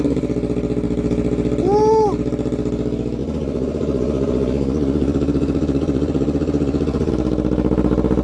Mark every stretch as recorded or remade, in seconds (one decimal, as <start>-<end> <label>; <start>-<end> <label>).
0.0-3.2 recorded; 3.2-7.1 remade; 7.1-8.2 recorded